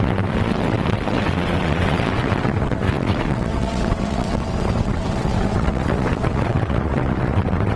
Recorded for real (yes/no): no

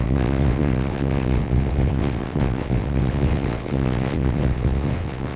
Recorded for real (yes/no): no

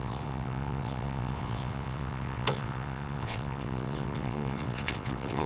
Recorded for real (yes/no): no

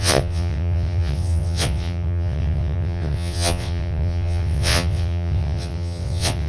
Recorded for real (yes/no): no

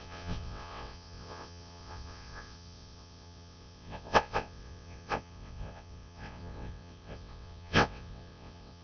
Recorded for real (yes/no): no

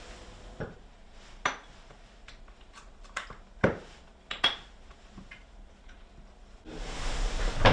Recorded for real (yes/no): yes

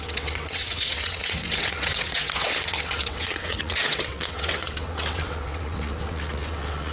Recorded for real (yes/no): no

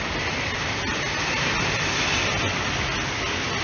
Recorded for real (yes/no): yes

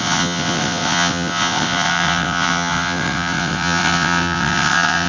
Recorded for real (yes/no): no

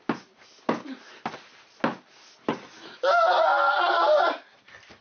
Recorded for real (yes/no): yes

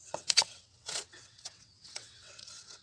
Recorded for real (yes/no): no